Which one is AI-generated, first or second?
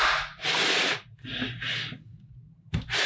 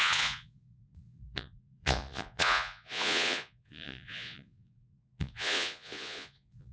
second